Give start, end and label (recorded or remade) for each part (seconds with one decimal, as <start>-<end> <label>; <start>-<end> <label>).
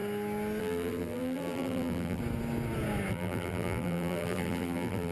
0.0-0.6 recorded; 0.6-2.2 remade; 2.2-3.1 recorded; 3.1-5.1 remade